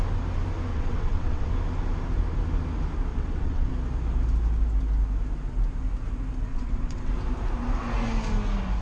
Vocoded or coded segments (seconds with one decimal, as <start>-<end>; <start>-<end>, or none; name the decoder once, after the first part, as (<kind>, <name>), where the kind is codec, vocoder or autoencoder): 0.7-1.5 (vocoder, WaveNeXt); 3.1-3.7; 6.5-7.1